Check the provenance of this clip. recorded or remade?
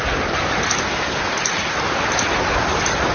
recorded